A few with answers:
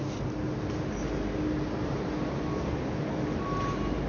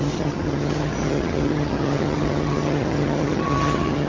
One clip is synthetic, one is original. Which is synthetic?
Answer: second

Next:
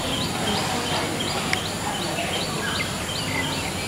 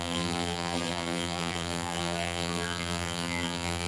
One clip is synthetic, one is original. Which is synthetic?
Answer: second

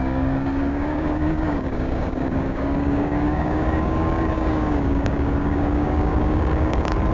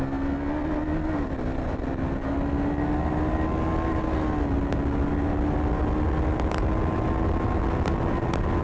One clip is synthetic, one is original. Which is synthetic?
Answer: first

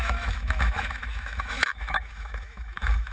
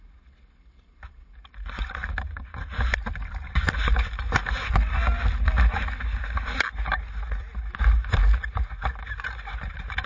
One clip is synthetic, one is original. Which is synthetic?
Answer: first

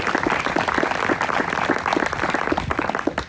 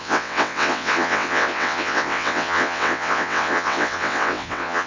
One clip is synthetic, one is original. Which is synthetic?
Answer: second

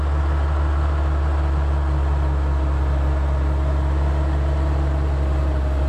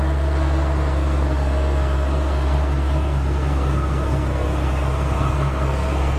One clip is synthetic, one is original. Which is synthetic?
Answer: second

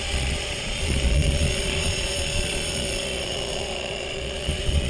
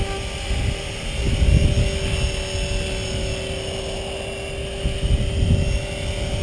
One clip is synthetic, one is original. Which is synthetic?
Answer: first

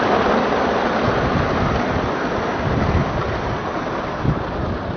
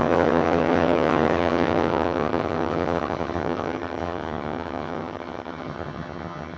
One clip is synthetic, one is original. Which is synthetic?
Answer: second